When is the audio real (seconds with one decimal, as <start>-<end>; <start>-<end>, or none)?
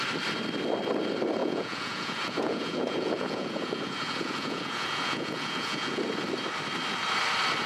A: 0.0-1.4; 6.0-7.7